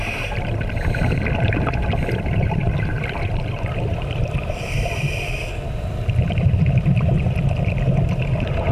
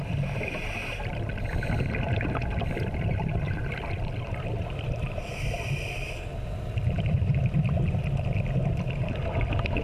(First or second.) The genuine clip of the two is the second